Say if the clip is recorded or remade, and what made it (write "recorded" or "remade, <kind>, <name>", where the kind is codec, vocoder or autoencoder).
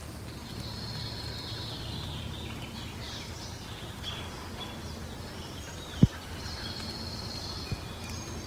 recorded